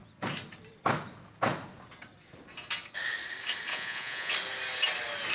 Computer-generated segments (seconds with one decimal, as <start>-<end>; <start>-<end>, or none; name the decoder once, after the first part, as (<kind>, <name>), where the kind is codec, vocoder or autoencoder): 3.7-4.3 (vocoder, Vocos)